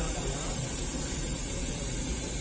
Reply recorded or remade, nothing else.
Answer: recorded